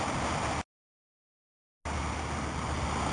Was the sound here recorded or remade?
recorded